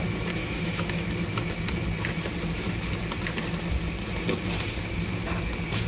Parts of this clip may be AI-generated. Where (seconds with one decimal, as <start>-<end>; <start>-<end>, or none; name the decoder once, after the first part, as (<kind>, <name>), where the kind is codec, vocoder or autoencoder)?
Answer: 0.4-1.1 (autoencoder, DAC-VAE)